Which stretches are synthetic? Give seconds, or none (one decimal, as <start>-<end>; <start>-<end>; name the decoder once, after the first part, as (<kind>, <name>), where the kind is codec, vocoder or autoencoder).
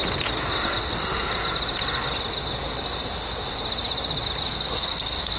0.8-1.3 (codec, SNAC); 4.5-5.4